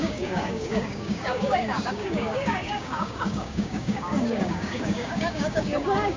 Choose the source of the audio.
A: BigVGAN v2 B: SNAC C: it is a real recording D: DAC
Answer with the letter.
D